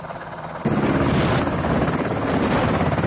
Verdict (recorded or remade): remade